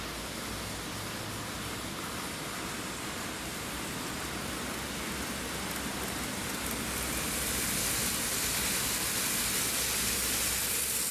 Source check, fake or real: real